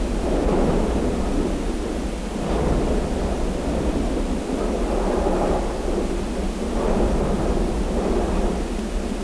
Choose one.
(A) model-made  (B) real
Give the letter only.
B